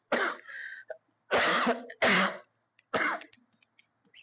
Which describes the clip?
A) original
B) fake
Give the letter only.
A